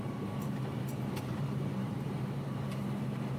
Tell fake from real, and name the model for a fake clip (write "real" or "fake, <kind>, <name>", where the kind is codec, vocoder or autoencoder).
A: fake, vocoder, BigVGAN v2